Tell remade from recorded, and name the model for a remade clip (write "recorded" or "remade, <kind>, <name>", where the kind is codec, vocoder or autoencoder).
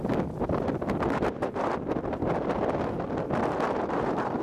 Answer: recorded